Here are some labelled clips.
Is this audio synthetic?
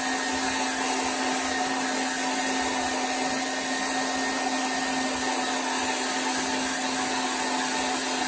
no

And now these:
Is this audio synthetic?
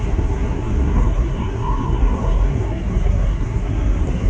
yes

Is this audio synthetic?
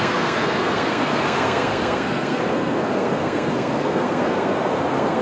yes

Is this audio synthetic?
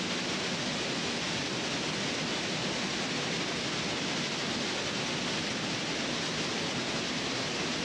no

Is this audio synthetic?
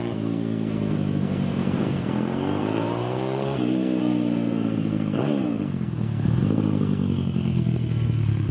yes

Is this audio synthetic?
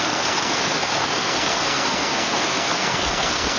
yes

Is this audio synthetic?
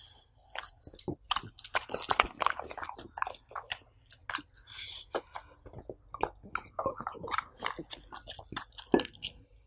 no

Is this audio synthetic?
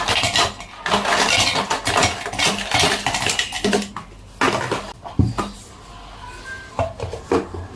no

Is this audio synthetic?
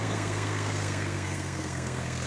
yes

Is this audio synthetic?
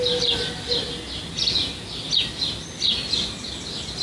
no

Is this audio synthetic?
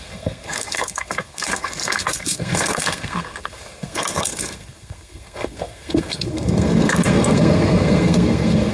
yes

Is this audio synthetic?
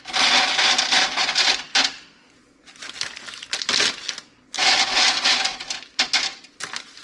no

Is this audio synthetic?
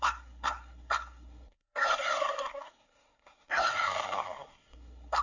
yes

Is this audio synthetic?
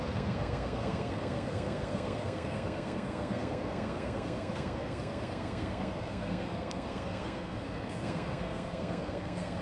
yes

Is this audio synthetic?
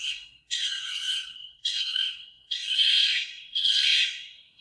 yes